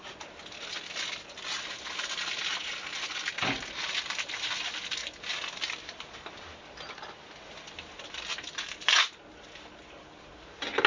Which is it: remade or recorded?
recorded